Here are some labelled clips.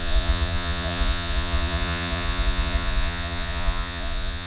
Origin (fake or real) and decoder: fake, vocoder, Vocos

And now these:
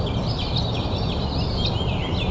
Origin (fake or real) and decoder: real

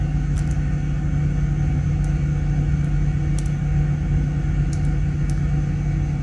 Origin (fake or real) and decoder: real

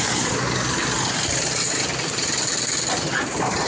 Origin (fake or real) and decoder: real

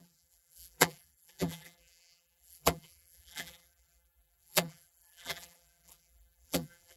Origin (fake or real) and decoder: fake, vocoder, BigVGAN v2